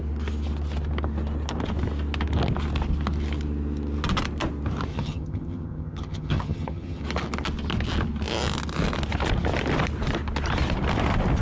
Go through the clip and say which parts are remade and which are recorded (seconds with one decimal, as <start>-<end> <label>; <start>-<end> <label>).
0.0-4.9 recorded; 4.9-7.0 remade; 7.0-11.4 recorded